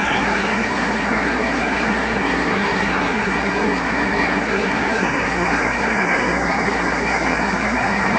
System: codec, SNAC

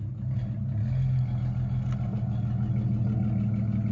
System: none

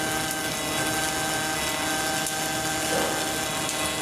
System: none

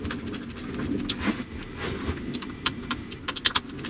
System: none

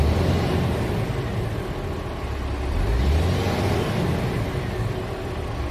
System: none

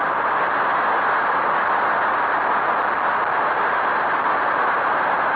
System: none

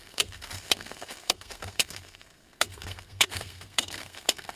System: codec, SNAC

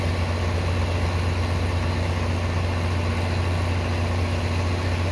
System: none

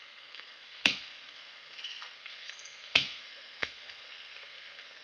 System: codec, SNAC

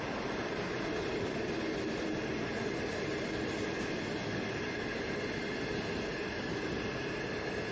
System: none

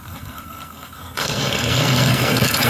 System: codec, SNAC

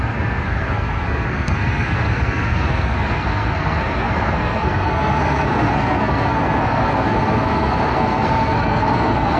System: codec, SNAC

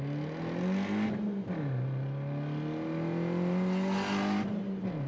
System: none